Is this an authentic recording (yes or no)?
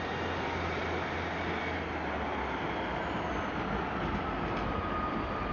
yes